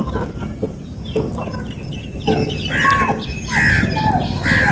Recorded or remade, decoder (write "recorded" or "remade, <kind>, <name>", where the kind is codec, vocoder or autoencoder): recorded